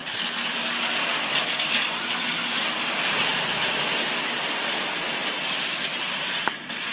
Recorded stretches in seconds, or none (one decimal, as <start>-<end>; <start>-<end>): 0.0-6.9